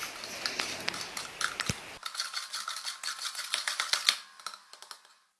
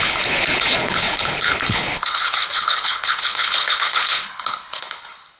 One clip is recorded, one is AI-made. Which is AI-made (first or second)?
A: second